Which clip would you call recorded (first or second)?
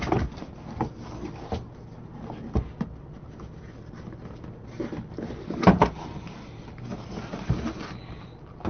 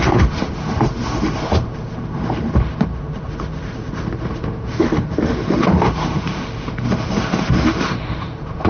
first